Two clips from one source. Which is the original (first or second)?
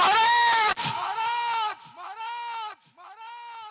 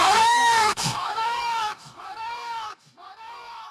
first